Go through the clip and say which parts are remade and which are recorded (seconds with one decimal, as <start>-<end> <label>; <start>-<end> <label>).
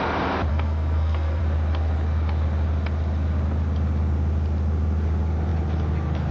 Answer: 0.0-0.5 recorded; 0.5-1.4 remade; 1.4-6.3 recorded